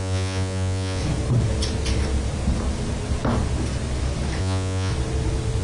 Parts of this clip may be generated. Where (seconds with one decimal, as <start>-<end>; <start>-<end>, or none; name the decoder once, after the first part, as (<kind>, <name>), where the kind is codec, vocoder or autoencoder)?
0.0-1.0 (vocoder, Vocos); 4.4-4.9